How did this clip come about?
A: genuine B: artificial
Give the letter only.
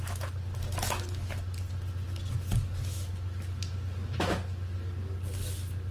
A